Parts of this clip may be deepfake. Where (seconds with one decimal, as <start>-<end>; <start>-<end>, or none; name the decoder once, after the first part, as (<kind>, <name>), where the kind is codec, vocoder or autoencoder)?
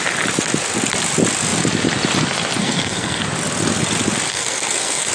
2.6-3.2 (codec, SNAC); 4.3-5.1